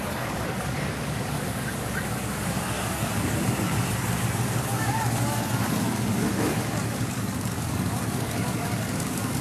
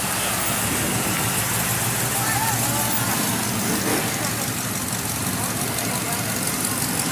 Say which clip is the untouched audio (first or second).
second